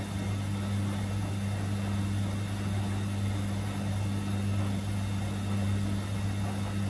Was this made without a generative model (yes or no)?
yes